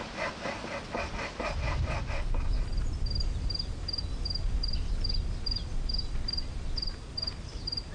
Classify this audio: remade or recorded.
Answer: recorded